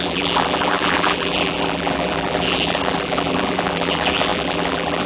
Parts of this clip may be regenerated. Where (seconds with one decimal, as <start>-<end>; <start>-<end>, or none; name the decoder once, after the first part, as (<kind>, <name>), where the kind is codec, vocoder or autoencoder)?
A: 0.0-5.1 (vocoder, BigVGAN v2)